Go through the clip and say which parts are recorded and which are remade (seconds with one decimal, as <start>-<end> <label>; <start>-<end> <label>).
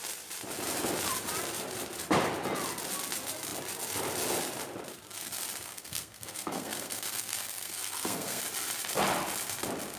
0.0-5.7 recorded; 5.7-8.4 remade; 8.4-10.0 recorded